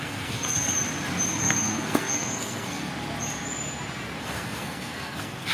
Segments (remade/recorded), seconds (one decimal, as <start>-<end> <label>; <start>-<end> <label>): 0.0-0.7 remade; 0.7-1.4 recorded; 1.4-2.9 remade; 2.9-4.2 recorded; 4.2-5.5 remade